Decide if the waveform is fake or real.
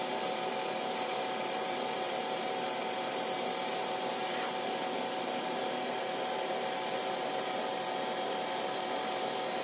real